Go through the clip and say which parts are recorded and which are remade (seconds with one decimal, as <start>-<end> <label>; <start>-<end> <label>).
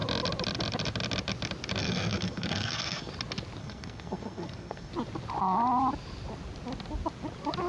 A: 0.0-1.8 recorded; 1.8-3.1 remade; 3.1-3.6 recorded; 3.6-4.9 remade; 4.9-7.7 recorded